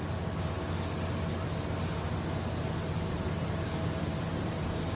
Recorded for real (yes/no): yes